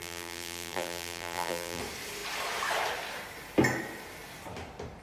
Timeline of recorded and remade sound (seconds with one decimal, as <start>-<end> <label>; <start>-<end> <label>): 0.0-1.8 remade; 1.8-5.0 recorded